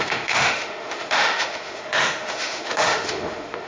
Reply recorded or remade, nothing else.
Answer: remade